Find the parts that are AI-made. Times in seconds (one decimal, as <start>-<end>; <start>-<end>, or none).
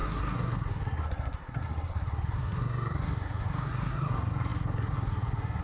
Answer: 0.0-5.6